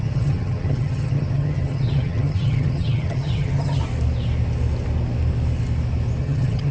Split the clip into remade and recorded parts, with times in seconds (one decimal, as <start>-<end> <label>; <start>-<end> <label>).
0.0-3.8 remade; 3.8-6.2 recorded; 6.2-6.7 remade

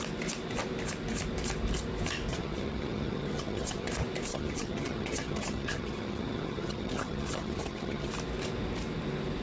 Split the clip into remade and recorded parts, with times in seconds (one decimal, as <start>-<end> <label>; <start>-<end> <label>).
0.0-2.3 recorded; 2.3-3.9 remade; 3.9-4.3 recorded; 4.3-8.1 remade; 8.1-9.4 recorded

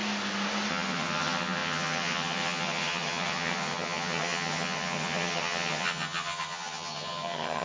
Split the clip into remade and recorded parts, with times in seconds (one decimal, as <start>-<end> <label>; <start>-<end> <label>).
0.0-0.7 recorded; 0.7-7.6 remade

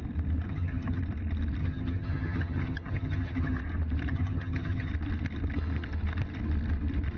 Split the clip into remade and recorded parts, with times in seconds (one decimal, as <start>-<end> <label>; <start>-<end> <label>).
0.0-0.5 recorded; 0.5-1.0 remade; 1.0-1.6 recorded; 1.6-3.6 remade; 3.6-4.1 recorded; 4.1-4.9 remade; 4.9-7.2 recorded

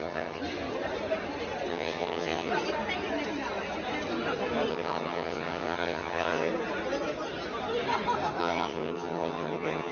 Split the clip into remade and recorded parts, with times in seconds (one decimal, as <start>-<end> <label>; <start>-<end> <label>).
0.0-0.4 remade; 0.4-1.7 recorded; 1.7-2.5 remade; 2.5-4.7 recorded; 4.7-6.5 remade; 6.5-8.4 recorded; 8.4-9.9 remade

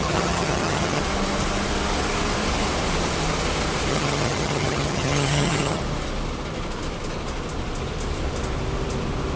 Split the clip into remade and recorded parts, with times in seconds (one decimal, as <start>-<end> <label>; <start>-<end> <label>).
0.0-1.0 remade; 1.0-3.9 recorded; 3.9-5.8 remade; 5.8-9.4 recorded

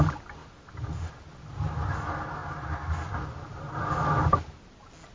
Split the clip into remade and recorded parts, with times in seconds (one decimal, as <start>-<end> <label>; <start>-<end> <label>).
0.0-5.1 recorded

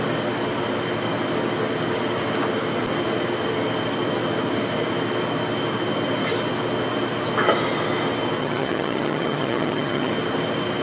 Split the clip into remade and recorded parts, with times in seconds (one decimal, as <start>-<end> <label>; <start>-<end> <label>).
0.0-8.4 recorded; 8.4-10.1 remade; 10.1-10.8 recorded